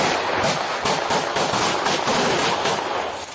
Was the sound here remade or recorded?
recorded